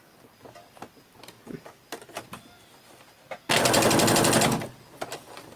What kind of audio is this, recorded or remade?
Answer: recorded